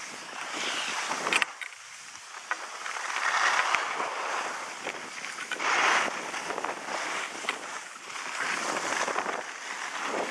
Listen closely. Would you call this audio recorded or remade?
recorded